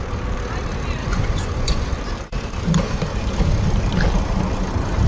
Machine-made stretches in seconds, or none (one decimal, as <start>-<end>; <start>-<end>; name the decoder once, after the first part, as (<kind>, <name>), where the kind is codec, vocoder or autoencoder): 1.0-1.9 (vocoder, Vocos)